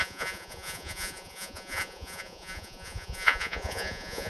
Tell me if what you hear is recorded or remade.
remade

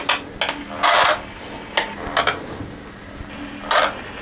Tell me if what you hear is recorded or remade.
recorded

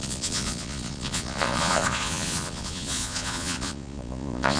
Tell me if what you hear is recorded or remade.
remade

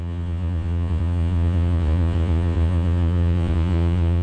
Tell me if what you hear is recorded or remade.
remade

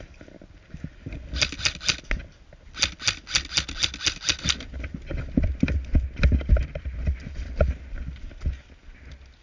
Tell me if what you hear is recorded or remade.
recorded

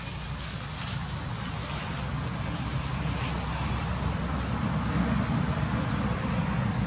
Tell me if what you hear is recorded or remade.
recorded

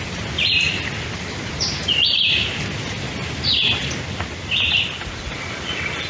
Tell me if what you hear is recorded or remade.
recorded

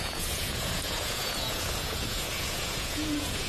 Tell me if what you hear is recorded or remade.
remade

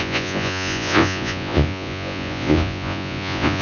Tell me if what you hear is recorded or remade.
remade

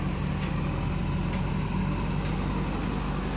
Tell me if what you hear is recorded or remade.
recorded